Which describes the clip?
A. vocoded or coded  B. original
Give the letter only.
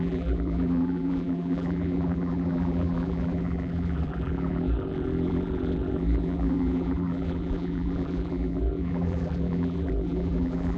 A